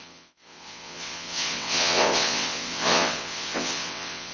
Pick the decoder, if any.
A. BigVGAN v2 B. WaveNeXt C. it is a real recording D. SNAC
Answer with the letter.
B